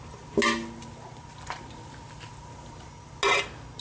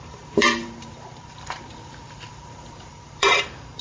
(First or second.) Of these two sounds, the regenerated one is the second